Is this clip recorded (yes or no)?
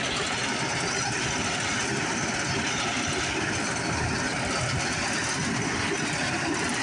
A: yes